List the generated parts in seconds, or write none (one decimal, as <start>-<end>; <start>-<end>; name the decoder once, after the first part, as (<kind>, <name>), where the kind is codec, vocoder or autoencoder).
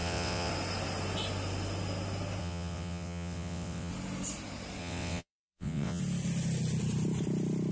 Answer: 0.0-0.5 (vocoder, WaveNeXt); 2.4-3.9; 4.8-6.0